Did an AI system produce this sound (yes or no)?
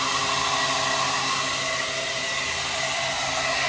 no